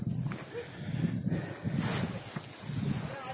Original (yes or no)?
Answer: yes